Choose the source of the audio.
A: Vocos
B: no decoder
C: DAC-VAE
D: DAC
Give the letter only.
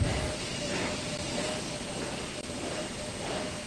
B